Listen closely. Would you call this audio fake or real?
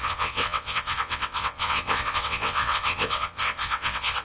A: fake